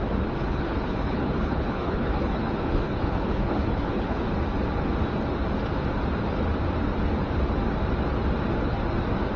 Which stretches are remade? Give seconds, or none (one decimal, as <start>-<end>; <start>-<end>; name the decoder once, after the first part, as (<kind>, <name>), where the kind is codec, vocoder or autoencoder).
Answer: 0.4-4.2 (codec, HILCodec)